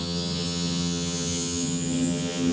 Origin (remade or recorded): remade